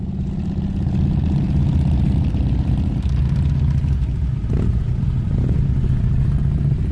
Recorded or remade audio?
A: recorded